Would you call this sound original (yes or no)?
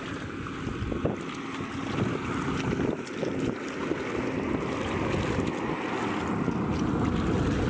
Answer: yes